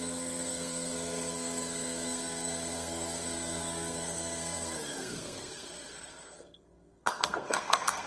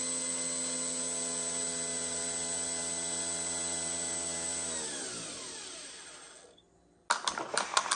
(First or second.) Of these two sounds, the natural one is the second